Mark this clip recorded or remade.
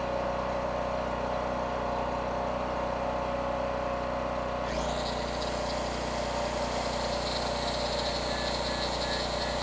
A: recorded